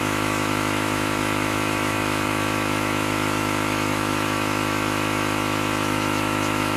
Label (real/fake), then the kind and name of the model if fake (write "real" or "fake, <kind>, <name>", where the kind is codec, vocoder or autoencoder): fake, autoencoder, DAC-VAE